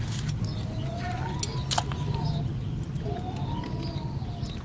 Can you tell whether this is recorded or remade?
recorded